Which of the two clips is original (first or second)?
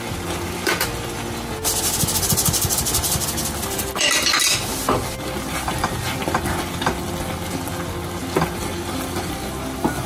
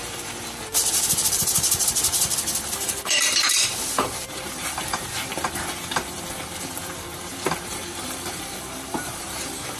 first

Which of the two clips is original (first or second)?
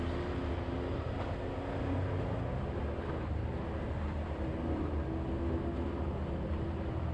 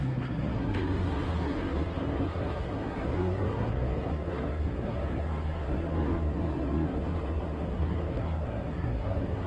first